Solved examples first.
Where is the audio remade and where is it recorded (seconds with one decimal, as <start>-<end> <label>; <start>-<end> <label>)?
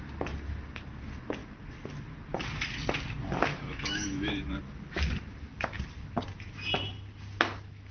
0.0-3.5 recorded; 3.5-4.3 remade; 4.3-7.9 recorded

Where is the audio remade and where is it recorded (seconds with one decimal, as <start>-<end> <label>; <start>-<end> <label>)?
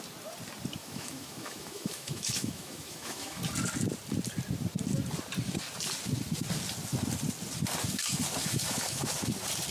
0.0-0.8 recorded; 0.8-3.4 remade; 3.4-8.4 recorded; 8.4-9.1 remade; 9.1-9.7 recorded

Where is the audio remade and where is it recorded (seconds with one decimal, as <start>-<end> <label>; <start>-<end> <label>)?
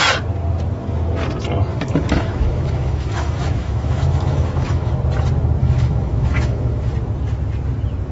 0.0-1.7 recorded; 1.7-4.9 remade; 4.9-5.6 recorded; 5.6-6.9 remade; 6.9-8.1 recorded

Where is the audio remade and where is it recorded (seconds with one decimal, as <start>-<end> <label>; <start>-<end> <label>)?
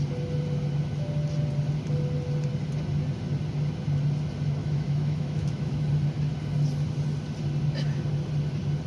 0.0-4.6 recorded; 4.6-5.9 remade; 5.9-8.9 recorded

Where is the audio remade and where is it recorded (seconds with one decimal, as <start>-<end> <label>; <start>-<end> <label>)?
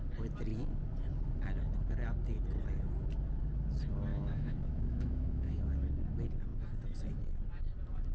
0.0-4.1 recorded; 4.1-5.6 remade; 5.6-8.1 recorded